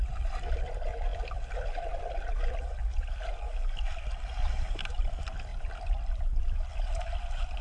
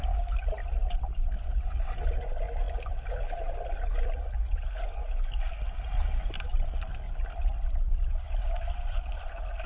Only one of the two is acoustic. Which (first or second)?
second